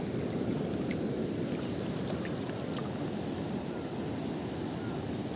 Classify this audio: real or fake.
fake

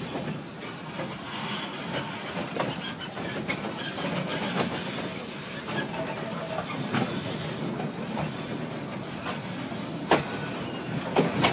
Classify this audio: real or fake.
real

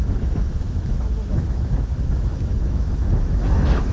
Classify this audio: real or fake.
fake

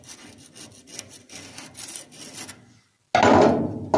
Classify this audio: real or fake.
real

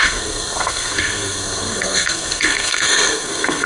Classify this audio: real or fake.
fake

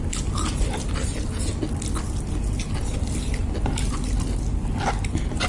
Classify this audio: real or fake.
real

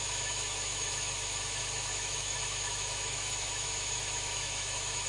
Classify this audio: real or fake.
fake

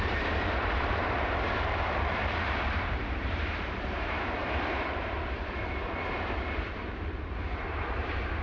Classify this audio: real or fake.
fake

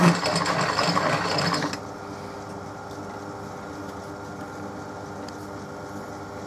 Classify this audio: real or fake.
real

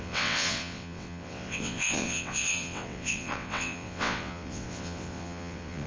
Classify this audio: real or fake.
fake